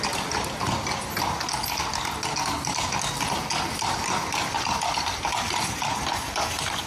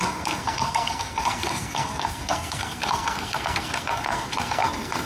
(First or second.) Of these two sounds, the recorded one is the first